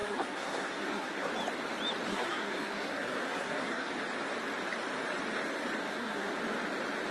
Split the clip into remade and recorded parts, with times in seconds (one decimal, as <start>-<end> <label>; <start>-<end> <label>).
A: 0.0-1.3 remade; 1.3-2.1 recorded; 2.1-3.9 remade; 3.9-5.8 recorded; 5.8-6.4 remade; 6.4-7.1 recorded